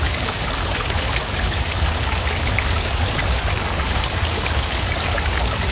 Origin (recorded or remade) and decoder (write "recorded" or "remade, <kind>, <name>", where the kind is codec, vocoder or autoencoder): remade, codec, DAC